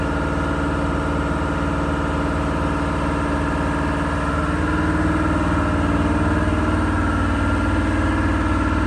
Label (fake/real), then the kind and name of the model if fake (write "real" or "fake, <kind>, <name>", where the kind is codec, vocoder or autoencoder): real